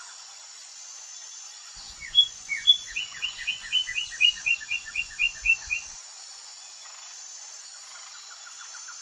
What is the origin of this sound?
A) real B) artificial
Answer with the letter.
B